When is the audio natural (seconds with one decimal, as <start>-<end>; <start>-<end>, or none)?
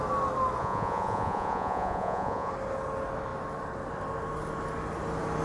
0.0-0.6; 2.5-5.4